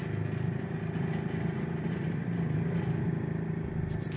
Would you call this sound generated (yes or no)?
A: no